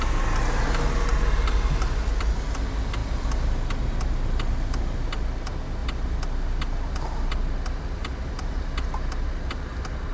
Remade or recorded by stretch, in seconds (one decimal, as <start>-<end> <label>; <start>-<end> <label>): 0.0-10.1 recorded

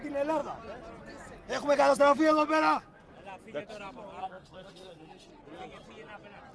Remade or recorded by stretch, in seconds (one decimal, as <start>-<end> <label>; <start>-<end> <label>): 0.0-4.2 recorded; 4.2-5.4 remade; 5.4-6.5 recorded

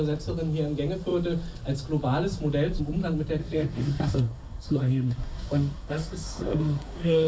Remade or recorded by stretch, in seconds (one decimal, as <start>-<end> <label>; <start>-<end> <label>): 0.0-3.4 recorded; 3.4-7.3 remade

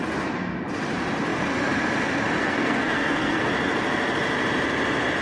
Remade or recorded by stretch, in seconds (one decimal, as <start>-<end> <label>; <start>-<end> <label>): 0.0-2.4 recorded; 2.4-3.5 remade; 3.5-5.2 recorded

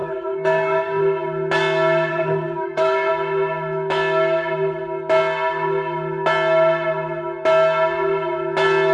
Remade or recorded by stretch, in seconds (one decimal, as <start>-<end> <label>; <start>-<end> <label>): 0.0-1.0 remade; 1.0-2.1 recorded; 2.1-3.1 remade; 3.1-8.9 recorded

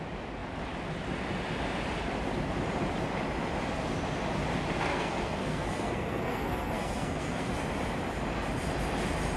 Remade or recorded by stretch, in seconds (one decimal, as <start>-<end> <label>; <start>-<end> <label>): 0.0-4.9 recorded; 4.9-7.5 remade; 7.5-9.4 recorded